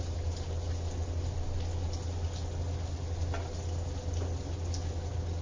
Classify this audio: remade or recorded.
recorded